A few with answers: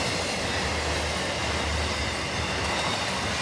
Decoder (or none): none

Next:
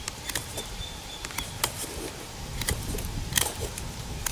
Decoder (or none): vocoder, BigVGAN v2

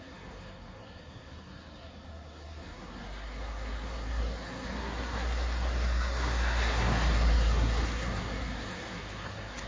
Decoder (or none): codec, SNAC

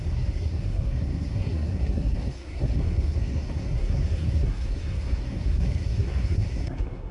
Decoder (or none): codec, SNAC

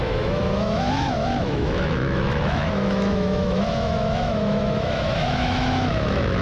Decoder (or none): autoencoder, DAC-VAE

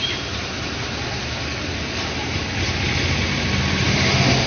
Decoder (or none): none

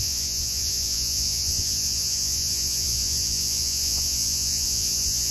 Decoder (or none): vocoder, Vocos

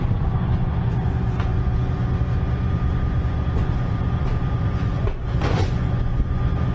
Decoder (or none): vocoder, Vocos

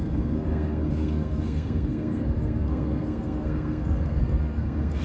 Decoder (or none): codec, SNAC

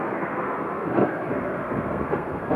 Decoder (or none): codec, SNAC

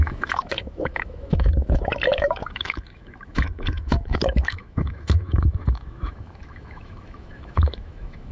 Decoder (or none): autoencoder, DAC-VAE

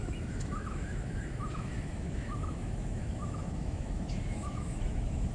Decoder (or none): autoencoder, DAC-VAE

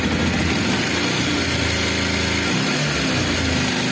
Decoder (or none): none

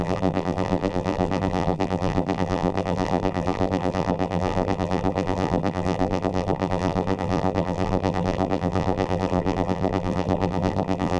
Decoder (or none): vocoder, BigVGAN v2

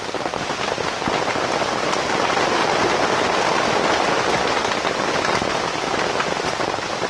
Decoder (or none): none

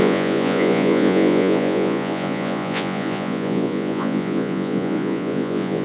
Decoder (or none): vocoder, Vocos